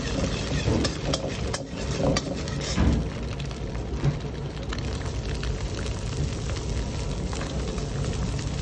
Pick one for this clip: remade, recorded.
recorded